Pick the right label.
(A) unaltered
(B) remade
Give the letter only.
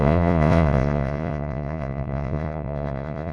B